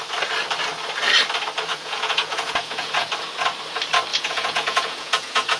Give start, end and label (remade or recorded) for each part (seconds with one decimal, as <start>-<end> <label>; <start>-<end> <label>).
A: 0.0-1.7 recorded; 1.7-3.1 remade; 3.1-4.1 recorded; 4.1-5.6 remade